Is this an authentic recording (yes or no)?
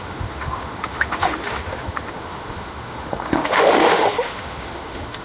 no